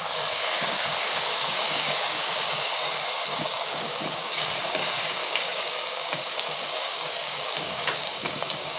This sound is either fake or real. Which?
fake